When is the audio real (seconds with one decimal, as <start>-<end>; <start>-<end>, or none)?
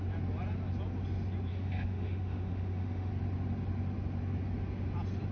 0.0-1.5; 3.1-5.3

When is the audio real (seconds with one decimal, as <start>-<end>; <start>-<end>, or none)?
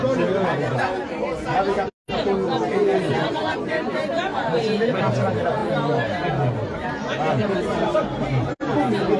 0.0-4.3; 5.0-9.2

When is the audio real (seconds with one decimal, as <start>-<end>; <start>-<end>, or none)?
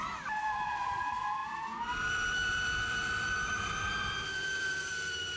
none